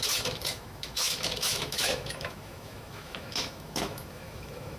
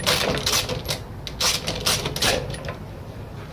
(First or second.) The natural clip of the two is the second